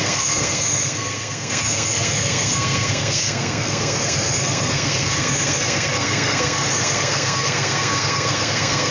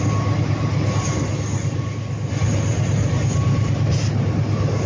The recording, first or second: second